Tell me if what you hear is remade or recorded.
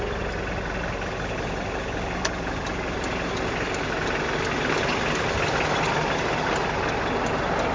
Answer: recorded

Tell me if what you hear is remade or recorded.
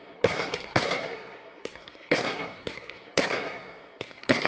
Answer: remade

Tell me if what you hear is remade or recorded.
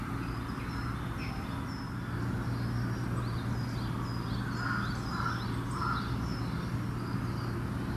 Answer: recorded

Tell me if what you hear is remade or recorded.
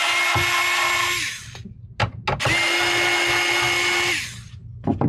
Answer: recorded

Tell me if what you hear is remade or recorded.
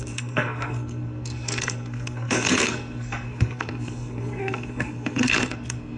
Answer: remade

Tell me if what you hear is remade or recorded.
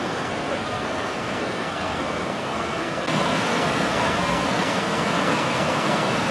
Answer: remade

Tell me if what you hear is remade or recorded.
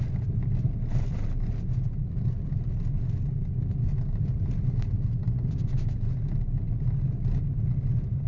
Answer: recorded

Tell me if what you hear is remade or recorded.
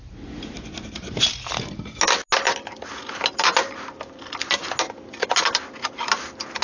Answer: recorded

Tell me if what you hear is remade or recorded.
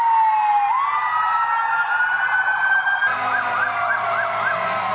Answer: recorded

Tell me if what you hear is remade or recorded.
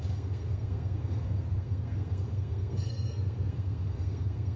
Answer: remade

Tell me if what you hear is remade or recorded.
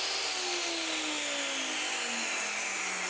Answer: recorded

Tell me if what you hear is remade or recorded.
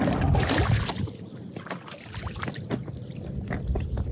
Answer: recorded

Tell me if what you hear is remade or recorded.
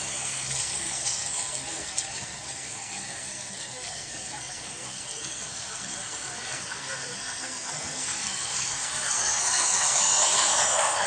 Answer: remade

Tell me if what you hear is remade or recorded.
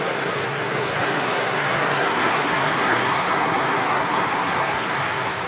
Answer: remade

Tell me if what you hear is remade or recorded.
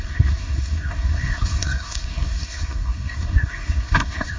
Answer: remade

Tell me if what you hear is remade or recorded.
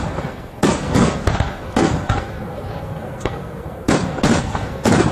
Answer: remade